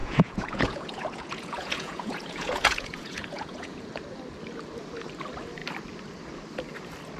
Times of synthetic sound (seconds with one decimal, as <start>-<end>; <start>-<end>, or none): 0.0-3.9